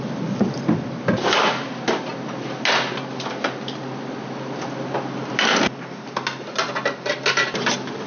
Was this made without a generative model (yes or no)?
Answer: yes